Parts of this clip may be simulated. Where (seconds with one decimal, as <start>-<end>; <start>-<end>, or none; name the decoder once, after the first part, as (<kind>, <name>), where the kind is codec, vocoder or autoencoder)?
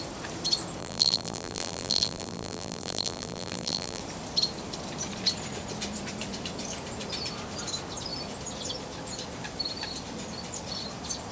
0.8-4.0 (vocoder, BigVGAN v2)